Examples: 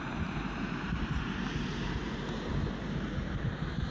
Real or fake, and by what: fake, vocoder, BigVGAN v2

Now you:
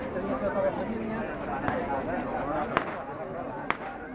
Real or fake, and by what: real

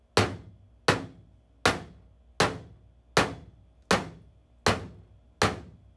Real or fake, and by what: real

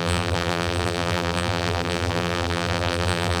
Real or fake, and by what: fake, vocoder, BigVGAN v2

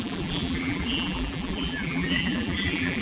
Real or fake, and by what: fake, vocoder, BigVGAN v2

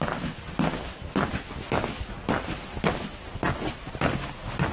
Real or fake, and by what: real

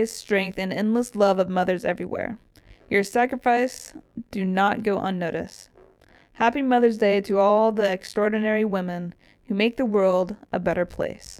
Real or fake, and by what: fake, vocoder, BigVGAN v2